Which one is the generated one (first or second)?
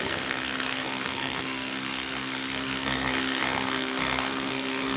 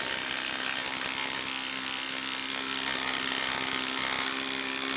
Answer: first